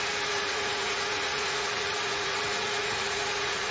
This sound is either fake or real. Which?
fake